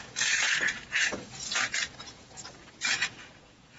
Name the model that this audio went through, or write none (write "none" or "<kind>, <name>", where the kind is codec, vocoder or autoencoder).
vocoder, Vocos